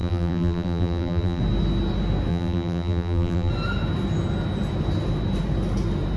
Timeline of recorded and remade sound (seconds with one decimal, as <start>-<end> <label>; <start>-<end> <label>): 0.0-1.4 remade; 1.4-2.3 recorded; 2.3-3.5 remade; 3.5-6.2 recorded